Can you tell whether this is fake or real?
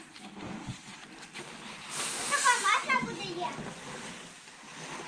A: real